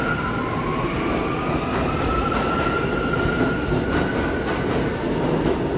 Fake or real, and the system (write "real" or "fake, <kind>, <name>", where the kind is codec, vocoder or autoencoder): real